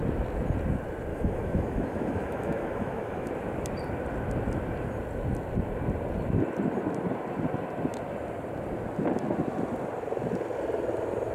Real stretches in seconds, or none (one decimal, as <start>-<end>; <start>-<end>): 0.0-1.1; 3.3-11.3